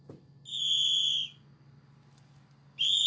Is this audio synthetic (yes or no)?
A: no